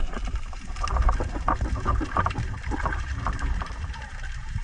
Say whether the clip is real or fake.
fake